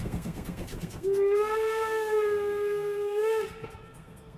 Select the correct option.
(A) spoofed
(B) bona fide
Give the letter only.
A